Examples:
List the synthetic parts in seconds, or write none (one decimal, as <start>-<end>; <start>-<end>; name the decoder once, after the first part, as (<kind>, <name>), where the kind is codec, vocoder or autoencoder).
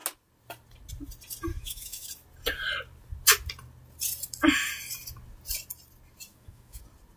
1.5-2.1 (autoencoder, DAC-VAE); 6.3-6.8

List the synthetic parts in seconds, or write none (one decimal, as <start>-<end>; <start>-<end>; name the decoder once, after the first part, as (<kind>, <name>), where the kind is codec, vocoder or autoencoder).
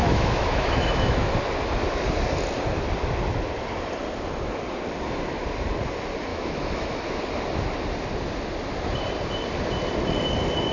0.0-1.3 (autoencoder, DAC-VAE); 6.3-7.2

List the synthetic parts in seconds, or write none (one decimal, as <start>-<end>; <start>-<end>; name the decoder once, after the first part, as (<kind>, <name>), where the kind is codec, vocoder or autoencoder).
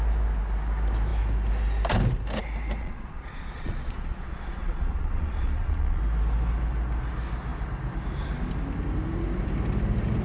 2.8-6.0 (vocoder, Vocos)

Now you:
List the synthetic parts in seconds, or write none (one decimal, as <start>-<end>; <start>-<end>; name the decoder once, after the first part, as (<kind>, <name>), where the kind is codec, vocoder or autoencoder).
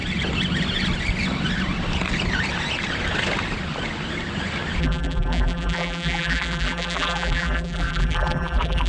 4.8-8.9 (vocoder, BigVGAN v2)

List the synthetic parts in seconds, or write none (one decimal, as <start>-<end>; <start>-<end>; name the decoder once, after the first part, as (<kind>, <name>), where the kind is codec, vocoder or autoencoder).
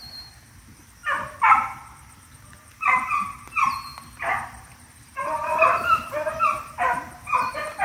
0.0-1.0 (vocoder, BigVGAN v2); 1.9-7.8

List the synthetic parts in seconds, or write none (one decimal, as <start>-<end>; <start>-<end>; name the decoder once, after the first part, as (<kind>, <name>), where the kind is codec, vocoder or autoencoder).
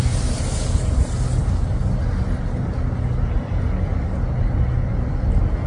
none